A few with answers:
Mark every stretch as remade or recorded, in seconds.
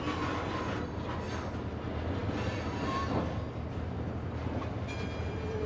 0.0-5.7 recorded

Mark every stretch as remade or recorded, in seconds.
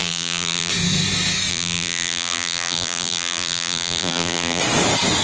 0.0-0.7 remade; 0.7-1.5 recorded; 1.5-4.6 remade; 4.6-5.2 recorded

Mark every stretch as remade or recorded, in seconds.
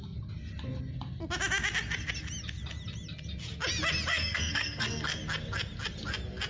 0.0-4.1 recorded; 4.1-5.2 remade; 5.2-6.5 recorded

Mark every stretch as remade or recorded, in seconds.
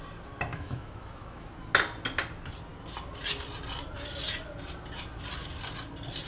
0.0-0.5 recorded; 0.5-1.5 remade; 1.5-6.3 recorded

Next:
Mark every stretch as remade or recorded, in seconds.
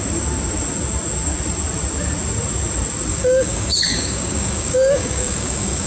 0.0-3.1 recorded; 3.1-5.9 remade